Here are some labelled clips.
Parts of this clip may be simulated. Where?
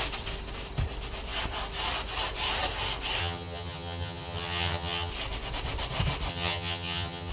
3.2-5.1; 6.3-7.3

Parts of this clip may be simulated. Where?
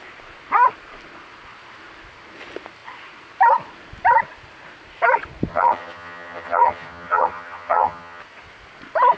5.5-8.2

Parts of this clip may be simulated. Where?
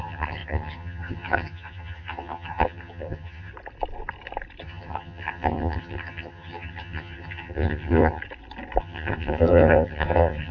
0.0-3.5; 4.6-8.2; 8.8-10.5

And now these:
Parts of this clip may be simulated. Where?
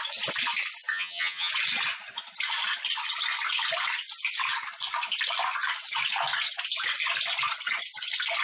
0.9-1.5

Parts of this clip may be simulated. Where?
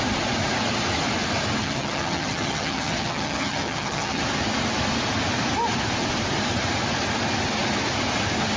1.6-4.2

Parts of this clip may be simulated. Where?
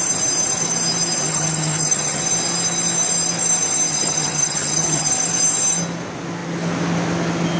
1.2-2.2; 3.9-5.1